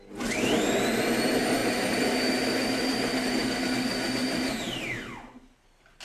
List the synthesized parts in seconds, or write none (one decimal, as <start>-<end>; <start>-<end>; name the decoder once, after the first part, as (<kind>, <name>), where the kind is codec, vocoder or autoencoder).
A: none